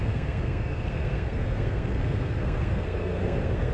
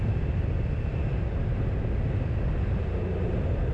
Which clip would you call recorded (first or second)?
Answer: second